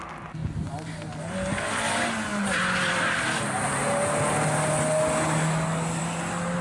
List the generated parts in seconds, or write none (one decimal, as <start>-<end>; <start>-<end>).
none

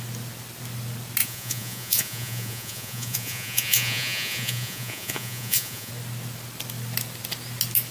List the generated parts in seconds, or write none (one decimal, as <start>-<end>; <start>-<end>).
1.2-5.9

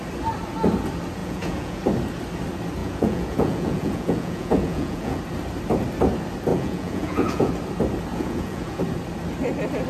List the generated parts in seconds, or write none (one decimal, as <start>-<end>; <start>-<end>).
1.2-1.8; 2.8-5.2; 6.5-7.5; 8.1-8.8

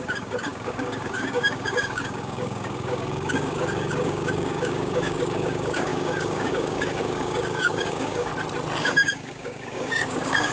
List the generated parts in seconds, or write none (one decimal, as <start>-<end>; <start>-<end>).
0.0-8.3; 8.8-10.5

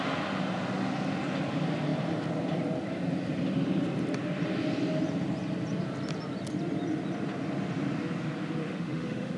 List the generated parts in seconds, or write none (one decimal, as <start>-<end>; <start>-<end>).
8.6-9.4